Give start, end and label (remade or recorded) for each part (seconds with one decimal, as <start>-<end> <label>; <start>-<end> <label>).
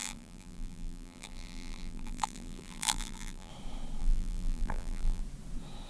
0.0-3.5 remade; 3.5-4.0 recorded; 4.0-5.2 remade; 5.2-5.9 recorded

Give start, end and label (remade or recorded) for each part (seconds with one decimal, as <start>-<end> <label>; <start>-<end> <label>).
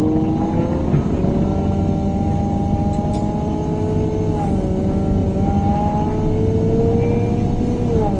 0.0-8.2 recorded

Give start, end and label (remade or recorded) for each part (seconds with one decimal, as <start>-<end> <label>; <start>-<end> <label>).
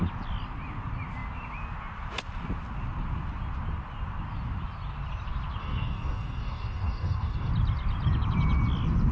0.0-5.6 recorded; 5.6-7.5 remade; 7.5-9.1 recorded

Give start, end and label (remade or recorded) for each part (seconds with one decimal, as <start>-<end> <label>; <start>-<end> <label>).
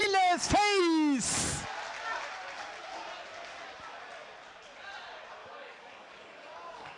0.0-0.8 remade; 0.8-5.4 recorded; 5.4-7.0 remade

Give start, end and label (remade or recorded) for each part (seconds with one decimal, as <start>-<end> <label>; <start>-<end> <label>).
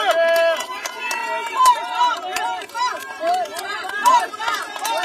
0.0-1.2 recorded; 1.2-4.2 remade; 4.2-5.0 recorded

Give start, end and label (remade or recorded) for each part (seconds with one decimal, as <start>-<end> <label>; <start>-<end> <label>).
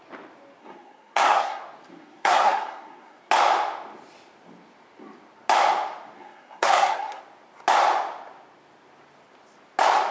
0.0-0.6 recorded; 0.6-1.6 remade; 1.6-2.0 recorded; 2.0-3.3 remade; 3.3-6.2 recorded; 6.2-7.2 remade; 7.2-10.1 recorded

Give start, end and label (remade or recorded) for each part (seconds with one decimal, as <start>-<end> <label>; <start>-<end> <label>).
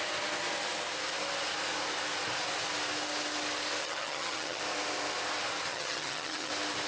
0.0-3.8 recorded; 3.8-4.6 remade; 4.6-5.7 recorded; 5.7-6.5 remade; 6.5-6.9 recorded